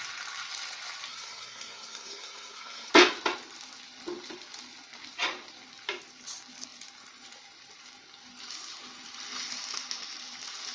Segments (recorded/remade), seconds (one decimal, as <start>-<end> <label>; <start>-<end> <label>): 0.0-1.1 recorded; 1.1-2.9 remade; 2.9-10.7 recorded